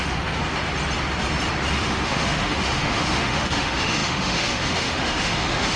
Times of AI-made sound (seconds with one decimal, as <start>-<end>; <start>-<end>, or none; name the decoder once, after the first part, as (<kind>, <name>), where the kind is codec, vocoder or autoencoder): 0.0-0.4 (autoencoder, DAC-VAE); 1.7-5.8